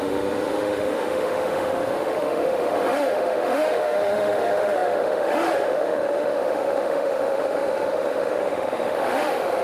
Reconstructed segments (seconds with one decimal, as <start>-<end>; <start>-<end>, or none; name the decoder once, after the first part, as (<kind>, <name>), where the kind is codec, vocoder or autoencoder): 0.0-9.6 (autoencoder, DAC-VAE)